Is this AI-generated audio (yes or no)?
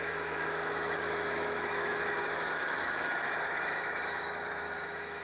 yes